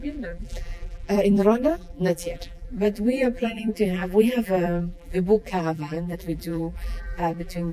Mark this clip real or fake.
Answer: fake